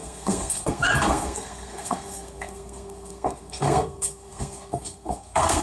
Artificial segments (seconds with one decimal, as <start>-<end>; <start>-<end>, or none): 0.0-5.6